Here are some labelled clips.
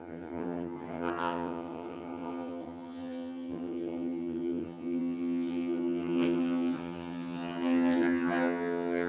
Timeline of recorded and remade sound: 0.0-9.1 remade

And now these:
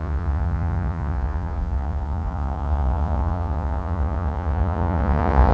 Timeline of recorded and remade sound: 0.0-5.5 remade

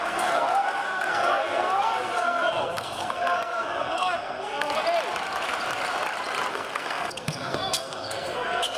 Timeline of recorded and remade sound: 0.0-4.8 remade; 4.8-6.5 recorded; 6.5-8.8 remade

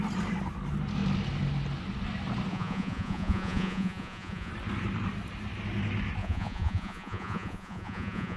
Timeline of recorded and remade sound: 0.0-2.5 recorded; 2.5-4.5 remade; 4.5-6.2 recorded; 6.2-8.4 remade